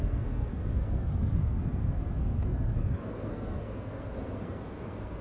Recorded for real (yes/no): no